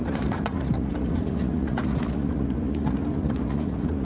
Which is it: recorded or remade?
remade